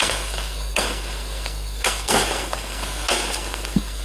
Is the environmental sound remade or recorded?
remade